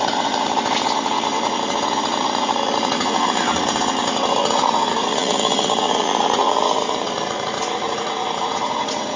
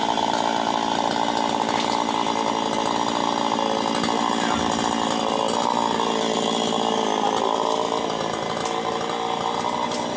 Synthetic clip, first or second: first